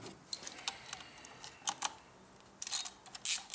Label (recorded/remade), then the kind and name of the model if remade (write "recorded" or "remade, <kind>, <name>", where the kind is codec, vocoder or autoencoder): recorded